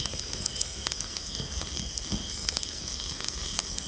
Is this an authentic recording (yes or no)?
no